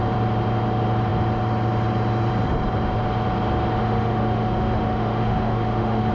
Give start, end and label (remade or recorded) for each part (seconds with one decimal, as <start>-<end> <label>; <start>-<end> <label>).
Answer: 0.0-3.8 recorded; 3.8-6.1 remade